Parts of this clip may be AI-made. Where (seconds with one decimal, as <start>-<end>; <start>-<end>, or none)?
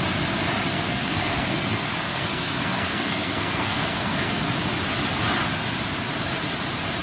0.7-4.4